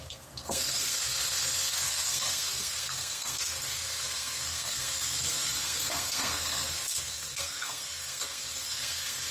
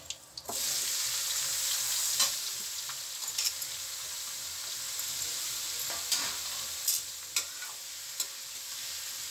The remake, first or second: first